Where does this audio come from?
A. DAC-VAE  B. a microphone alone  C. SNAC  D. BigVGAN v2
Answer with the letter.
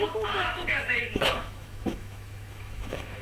A